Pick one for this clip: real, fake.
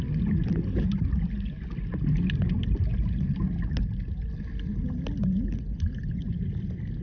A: real